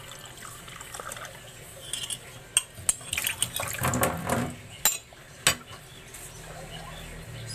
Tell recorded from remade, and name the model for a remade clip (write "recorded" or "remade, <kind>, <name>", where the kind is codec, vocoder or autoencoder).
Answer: recorded